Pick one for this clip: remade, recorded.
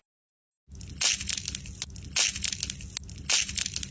recorded